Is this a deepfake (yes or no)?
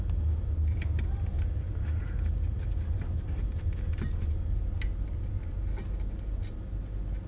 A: no